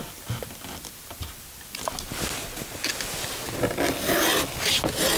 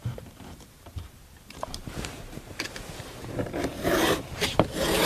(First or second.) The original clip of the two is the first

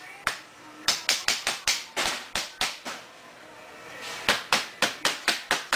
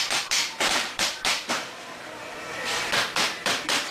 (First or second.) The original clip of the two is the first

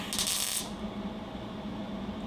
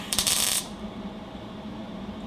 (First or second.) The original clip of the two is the first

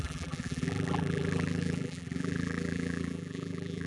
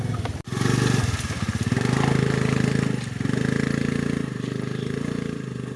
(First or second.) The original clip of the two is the second